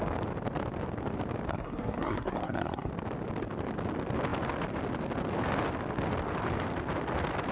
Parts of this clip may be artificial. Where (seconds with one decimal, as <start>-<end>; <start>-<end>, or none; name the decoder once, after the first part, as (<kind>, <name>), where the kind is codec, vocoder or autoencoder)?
1.5-2.9 (codec, SNAC)